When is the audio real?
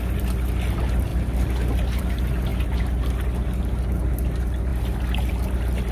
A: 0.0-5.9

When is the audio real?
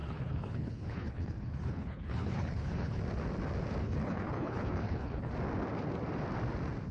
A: 3.0-3.8; 5.3-6.9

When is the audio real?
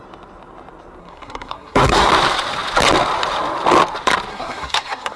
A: 0.0-1.0; 2.1-4.3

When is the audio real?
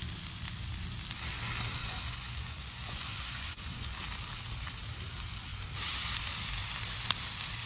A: 0.0-1.8; 4.0-7.7